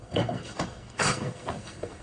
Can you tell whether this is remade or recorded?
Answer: remade